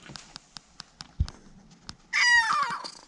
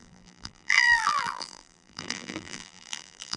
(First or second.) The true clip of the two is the first